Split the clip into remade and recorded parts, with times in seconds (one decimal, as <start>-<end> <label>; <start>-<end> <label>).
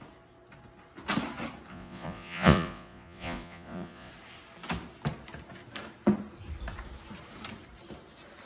0.0-1.7 recorded; 1.7-4.1 remade; 4.1-8.5 recorded